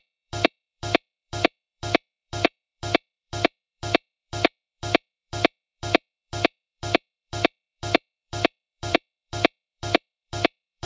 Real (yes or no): no